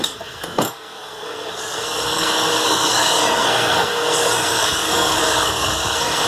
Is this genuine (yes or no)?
no